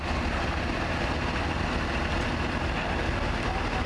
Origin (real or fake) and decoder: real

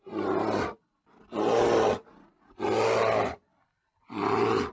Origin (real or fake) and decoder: real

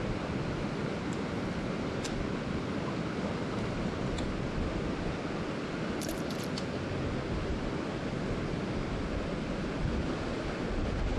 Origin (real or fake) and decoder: real